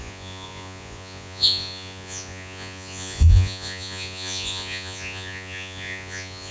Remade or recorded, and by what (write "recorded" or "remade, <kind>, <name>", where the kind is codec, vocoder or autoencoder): remade, vocoder, Vocos